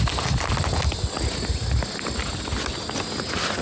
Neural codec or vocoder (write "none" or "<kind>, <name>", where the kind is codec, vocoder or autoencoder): none